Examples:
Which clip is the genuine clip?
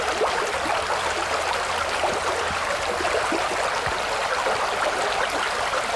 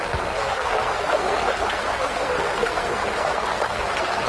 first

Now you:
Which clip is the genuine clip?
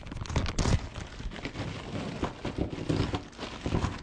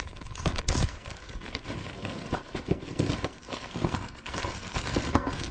first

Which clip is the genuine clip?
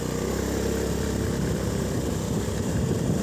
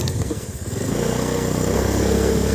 first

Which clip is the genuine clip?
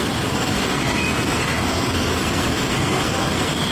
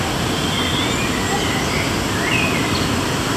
second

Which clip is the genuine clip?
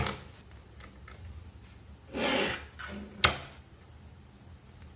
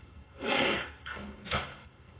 first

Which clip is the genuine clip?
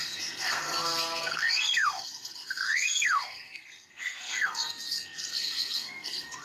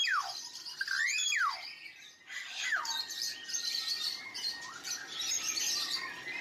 second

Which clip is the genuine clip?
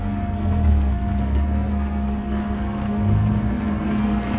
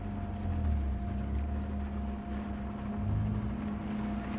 second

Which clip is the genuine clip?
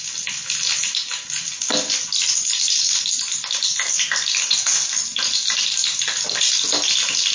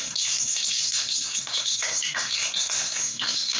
first